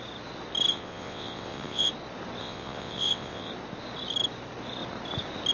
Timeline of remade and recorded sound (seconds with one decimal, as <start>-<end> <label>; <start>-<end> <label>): 0.0-0.7 recorded; 0.7-1.9 remade; 1.9-2.4 recorded; 2.4-3.5 remade; 3.5-5.5 recorded